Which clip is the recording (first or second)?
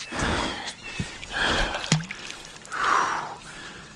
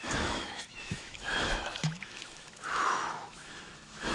first